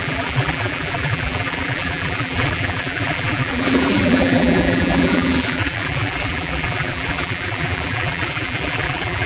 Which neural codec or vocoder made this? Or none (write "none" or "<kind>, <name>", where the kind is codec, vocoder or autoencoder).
vocoder, BigVGAN v2